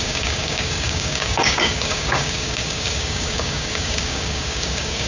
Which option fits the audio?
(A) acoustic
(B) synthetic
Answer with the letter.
B